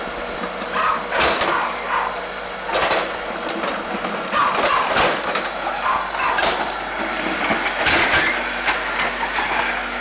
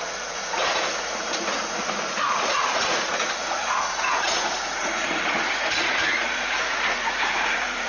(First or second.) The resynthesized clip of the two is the second